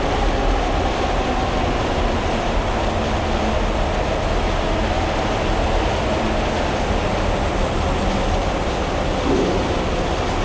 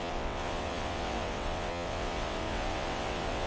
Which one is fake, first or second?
second